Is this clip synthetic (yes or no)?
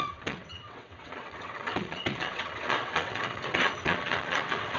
yes